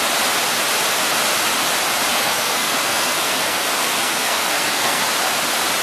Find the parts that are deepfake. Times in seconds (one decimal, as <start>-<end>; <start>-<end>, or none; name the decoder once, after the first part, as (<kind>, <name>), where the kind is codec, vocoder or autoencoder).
2.1-5.0 (codec, SNAC)